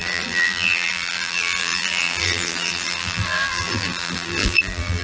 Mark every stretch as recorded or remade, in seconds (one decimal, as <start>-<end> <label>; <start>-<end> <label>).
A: 0.0-5.0 remade